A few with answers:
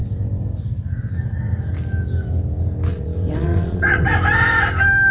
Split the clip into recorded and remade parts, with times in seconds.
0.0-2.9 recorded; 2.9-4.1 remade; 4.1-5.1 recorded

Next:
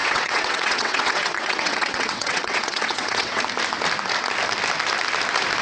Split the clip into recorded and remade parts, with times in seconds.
0.0-3.4 remade; 3.4-5.6 recorded